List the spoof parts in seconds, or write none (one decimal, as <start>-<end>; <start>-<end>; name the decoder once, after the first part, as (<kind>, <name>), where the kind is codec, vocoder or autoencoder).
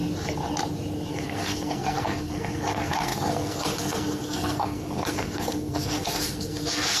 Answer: 1.1-7.0 (codec, SNAC)